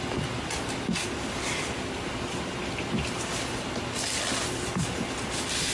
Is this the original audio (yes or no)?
yes